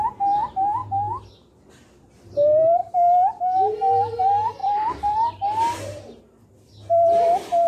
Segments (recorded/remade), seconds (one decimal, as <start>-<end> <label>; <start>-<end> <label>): 0.0-4.6 recorded; 4.6-6.2 remade; 6.2-7.7 recorded